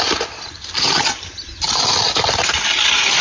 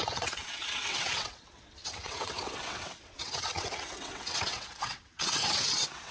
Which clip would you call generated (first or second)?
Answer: second